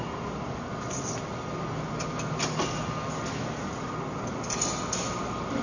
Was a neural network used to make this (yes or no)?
no